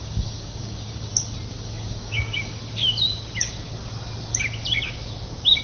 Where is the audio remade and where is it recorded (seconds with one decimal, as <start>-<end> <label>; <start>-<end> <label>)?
0.0-1.1 remade; 1.1-1.5 recorded; 1.5-2.6 remade; 2.6-5.6 recorded